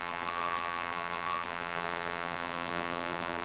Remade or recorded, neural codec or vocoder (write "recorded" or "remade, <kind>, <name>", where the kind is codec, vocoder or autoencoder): remade, vocoder, BigVGAN v2